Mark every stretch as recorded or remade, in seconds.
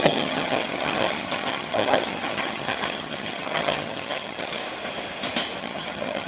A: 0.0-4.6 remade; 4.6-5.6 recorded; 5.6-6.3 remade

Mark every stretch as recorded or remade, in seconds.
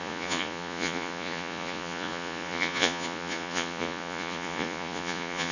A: 0.0-5.5 remade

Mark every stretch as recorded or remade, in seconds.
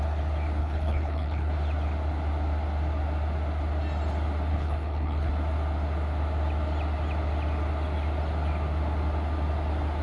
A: 0.0-0.6 recorded; 0.6-1.5 remade; 1.5-4.5 recorded; 4.5-5.3 remade; 5.3-10.0 recorded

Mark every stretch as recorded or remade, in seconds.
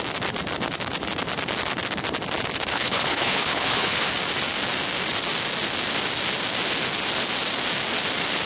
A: 0.0-2.7 recorded; 2.7-4.1 remade; 4.1-8.5 recorded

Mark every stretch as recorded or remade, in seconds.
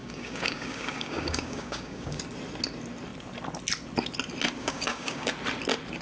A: 0.0-2.2 remade; 2.2-4.6 recorded; 4.6-5.3 remade; 5.3-6.0 recorded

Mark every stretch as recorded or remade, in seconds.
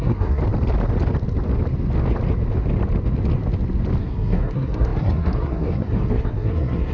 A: 0.0-0.4 remade; 0.4-4.0 recorded; 4.0-6.9 remade